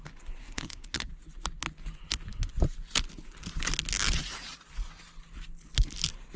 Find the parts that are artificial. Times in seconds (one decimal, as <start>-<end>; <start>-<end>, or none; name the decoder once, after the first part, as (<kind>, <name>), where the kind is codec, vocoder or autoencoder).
0.4-1.1 (codec, SNAC)